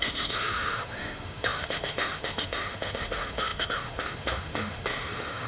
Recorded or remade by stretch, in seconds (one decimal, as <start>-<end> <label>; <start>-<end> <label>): 0.0-5.5 remade